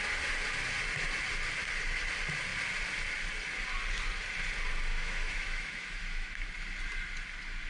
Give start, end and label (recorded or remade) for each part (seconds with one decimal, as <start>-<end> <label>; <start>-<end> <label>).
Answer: 0.0-4.9 recorded; 4.9-6.5 remade; 6.5-7.7 recorded